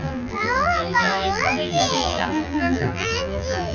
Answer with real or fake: fake